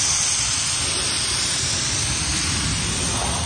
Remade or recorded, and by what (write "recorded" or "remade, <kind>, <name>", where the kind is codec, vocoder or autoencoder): recorded